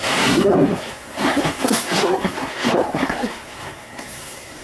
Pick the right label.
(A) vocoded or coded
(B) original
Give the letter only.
A